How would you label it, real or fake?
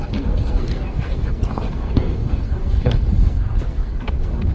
fake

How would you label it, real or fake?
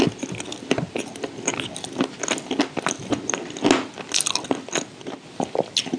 real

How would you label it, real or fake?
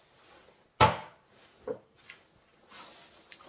real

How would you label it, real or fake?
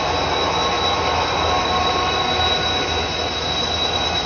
real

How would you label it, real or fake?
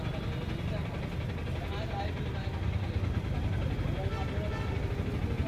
real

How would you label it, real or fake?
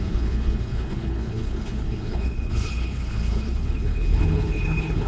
fake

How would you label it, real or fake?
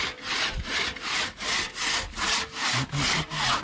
real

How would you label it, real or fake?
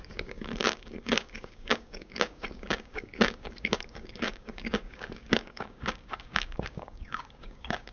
fake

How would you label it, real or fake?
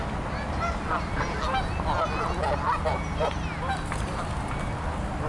real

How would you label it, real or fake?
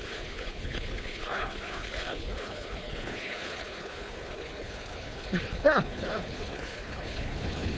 fake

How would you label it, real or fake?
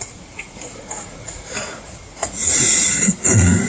fake